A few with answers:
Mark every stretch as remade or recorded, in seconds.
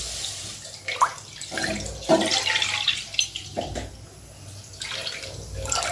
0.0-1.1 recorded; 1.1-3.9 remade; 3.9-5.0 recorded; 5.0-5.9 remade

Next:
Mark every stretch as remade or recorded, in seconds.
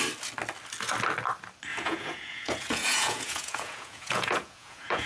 0.0-1.7 recorded; 1.7-5.1 remade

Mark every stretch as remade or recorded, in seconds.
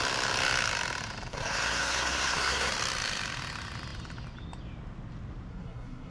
0.0-1.3 recorded; 1.3-2.7 remade; 2.7-5.5 recorded; 5.5-6.1 remade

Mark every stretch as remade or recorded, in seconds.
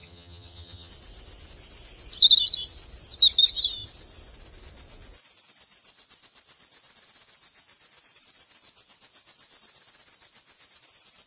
0.0-0.9 remade; 0.9-11.3 recorded